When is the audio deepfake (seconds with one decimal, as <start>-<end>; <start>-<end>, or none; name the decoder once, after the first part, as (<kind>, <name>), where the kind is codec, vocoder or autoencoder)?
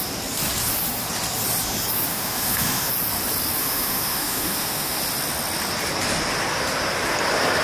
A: 2.1-2.9 (autoencoder, DAC-VAE); 3.6-5.0